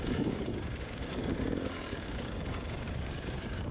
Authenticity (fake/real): fake